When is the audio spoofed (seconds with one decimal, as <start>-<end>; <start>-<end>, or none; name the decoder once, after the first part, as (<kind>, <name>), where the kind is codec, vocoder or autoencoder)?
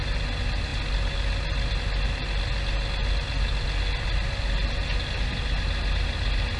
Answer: none